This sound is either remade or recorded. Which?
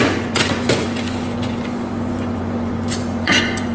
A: remade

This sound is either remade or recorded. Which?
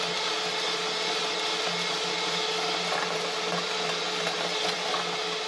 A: recorded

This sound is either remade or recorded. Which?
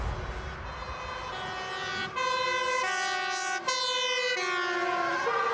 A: recorded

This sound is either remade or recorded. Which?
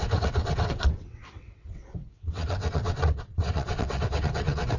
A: remade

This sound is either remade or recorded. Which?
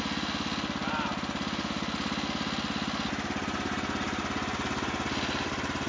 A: recorded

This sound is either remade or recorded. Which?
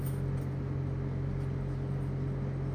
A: recorded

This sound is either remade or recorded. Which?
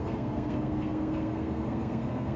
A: remade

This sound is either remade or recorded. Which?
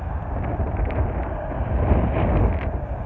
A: recorded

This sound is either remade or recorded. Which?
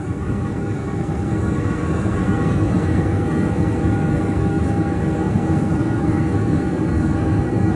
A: remade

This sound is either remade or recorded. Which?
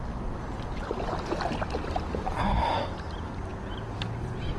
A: recorded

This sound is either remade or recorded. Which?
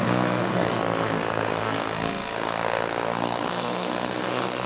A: remade